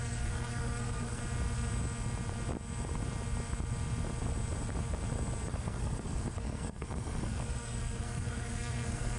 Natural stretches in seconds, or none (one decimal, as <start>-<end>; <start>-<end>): 1.2-5.5